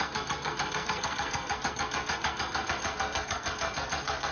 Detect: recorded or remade remade